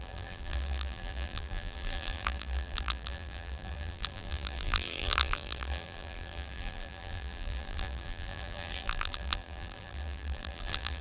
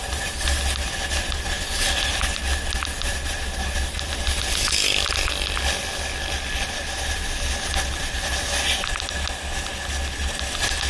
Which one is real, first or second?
second